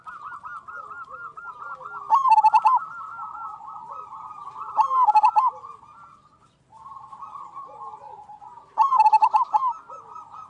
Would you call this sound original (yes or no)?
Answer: yes